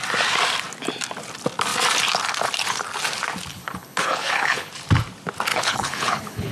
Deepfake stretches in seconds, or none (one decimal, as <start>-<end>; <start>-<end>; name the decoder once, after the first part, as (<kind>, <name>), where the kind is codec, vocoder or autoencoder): 3.5-4.7 (codec, HILCodec); 5.5-6.5